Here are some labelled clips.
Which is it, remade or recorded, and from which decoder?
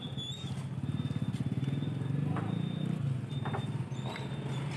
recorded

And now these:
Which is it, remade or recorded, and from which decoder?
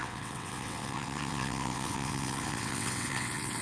remade, vocoder, WaveNeXt